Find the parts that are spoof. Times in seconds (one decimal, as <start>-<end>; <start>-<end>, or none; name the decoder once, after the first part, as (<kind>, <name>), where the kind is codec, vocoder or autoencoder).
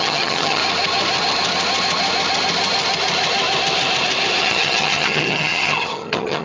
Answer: 0.0-0.6 (vocoder, HiFi-GAN); 4.4-6.4